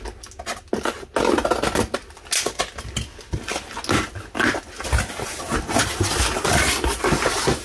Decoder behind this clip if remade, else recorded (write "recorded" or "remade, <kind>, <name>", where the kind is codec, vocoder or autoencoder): recorded